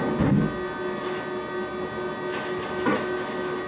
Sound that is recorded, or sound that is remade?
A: recorded